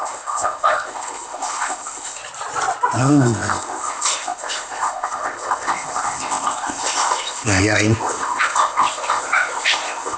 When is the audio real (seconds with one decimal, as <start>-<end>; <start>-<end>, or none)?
2.2-3.0